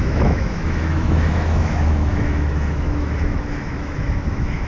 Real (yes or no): no